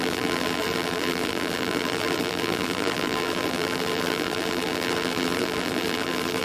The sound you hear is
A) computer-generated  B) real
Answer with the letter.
A